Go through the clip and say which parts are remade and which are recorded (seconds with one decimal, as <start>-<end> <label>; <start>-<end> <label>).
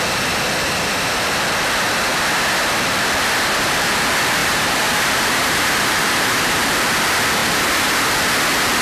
0.0-4.4 recorded; 4.4-6.5 remade; 6.5-7.4 recorded; 7.4-8.0 remade; 8.0-8.8 recorded